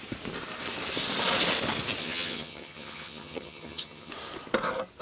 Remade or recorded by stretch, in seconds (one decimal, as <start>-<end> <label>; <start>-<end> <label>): 0.0-2.0 recorded; 2.0-4.1 remade; 4.1-5.0 recorded